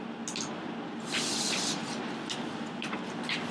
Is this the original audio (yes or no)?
yes